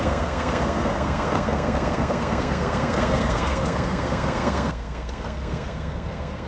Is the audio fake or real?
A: fake